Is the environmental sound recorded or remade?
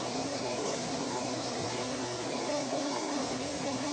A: remade